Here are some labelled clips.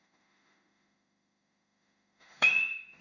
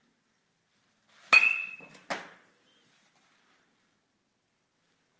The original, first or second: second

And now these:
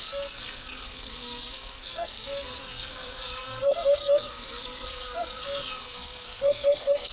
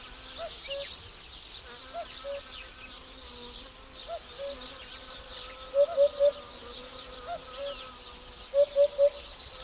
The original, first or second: second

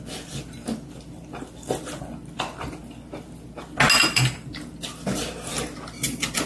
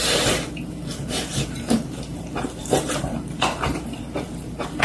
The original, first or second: first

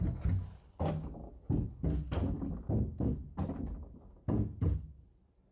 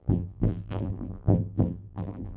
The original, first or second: first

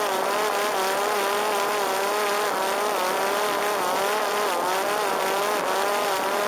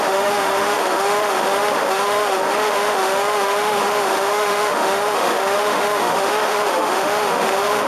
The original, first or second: first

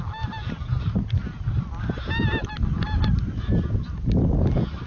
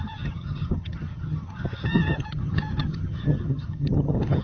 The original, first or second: first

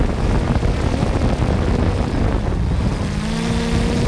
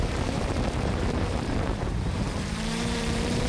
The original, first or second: first